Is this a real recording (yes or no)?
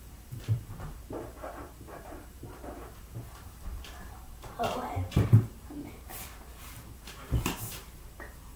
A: no